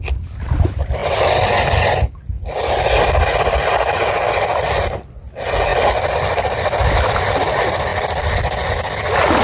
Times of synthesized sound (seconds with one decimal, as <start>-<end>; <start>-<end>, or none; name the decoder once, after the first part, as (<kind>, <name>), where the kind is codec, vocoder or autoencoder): none